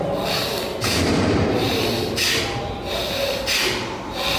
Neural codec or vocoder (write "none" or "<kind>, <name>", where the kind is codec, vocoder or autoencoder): none